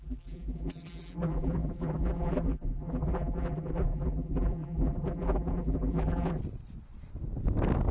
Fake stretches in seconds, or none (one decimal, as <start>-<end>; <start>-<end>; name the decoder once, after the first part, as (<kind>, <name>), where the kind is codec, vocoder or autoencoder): 0.0-6.4 (vocoder, BigVGAN v2)